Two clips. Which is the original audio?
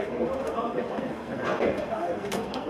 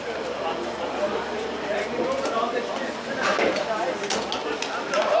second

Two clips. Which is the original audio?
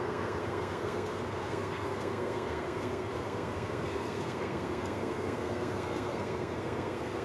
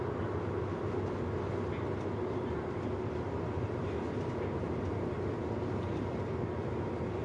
second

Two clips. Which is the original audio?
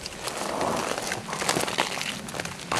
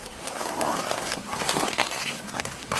first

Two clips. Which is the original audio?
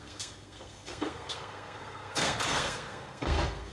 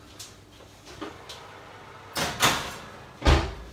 second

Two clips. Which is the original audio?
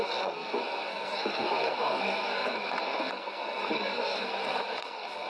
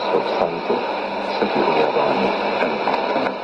second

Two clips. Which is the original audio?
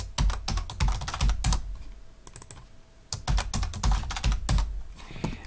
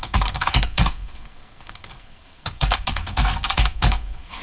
first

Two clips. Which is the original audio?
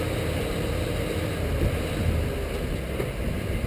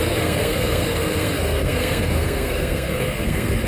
first